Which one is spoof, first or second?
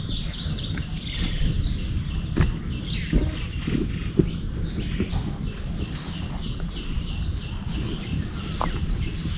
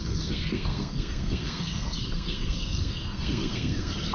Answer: second